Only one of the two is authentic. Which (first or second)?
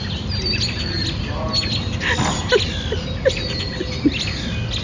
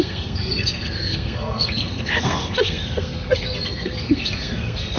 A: first